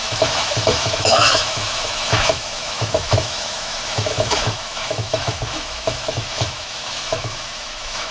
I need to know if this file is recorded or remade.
remade